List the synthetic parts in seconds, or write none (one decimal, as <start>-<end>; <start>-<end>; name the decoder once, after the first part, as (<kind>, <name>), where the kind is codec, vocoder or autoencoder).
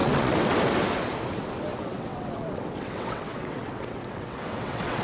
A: 0.0-0.6 (vocoder, WaveNeXt); 1.7-5.0